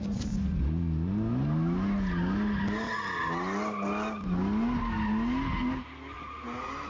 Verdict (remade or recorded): recorded